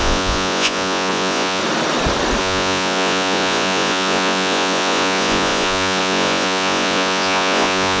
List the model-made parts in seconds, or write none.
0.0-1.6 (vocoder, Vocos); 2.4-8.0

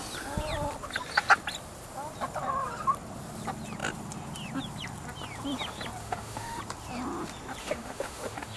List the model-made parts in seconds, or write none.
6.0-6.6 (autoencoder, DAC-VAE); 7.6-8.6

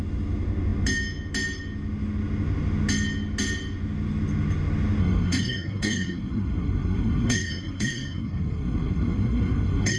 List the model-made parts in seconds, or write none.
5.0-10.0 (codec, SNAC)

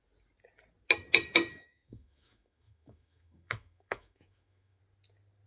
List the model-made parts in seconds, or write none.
1.5-4.8 (autoencoder, DAC-VAE)

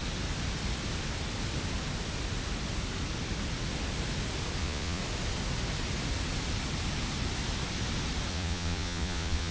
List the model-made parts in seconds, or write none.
4.6-5.0 (vocoder, Vocos); 8.3-9.5

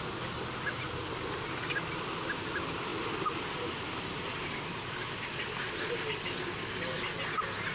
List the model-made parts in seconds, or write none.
none

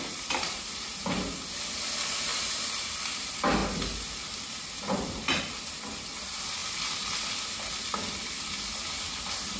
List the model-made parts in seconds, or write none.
none